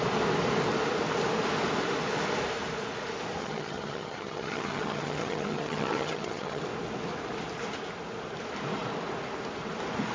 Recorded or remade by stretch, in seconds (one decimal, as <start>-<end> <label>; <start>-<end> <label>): 0.0-3.4 recorded; 3.4-6.6 remade; 6.6-10.1 recorded